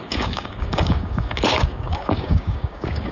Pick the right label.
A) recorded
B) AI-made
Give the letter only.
B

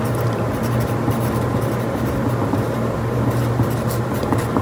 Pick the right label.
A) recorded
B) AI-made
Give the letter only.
A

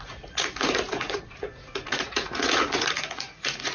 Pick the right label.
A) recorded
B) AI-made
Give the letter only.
B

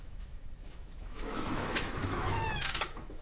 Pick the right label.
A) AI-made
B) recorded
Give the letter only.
A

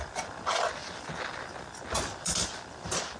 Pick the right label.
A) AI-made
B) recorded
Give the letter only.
B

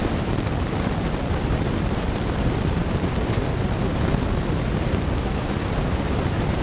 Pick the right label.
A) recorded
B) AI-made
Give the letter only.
B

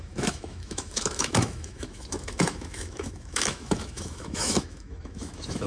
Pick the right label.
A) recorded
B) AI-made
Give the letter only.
B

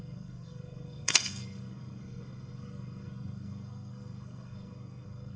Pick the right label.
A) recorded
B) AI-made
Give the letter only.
B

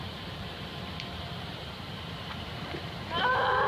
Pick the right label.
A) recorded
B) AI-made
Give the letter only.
B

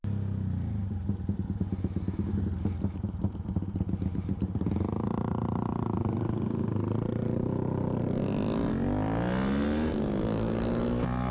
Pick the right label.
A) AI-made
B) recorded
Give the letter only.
B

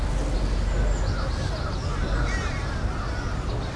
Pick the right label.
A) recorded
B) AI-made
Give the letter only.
A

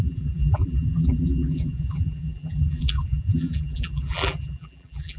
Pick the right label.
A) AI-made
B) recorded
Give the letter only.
A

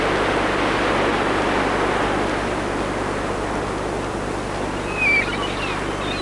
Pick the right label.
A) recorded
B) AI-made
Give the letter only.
A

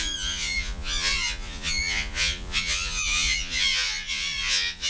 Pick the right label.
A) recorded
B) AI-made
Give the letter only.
B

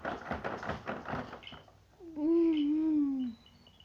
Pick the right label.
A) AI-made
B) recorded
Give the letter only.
B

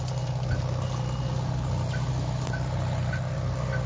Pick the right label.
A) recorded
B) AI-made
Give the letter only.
A